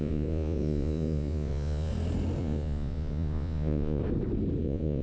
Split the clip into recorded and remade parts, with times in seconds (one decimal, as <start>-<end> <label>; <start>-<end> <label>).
0.0-1.9 remade; 1.9-2.4 recorded; 2.4-4.0 remade; 4.0-4.6 recorded; 4.6-5.0 remade